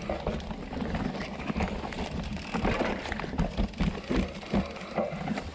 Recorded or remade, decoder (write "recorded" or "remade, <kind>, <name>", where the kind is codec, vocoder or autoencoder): recorded